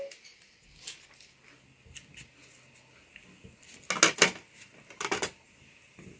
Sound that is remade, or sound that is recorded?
recorded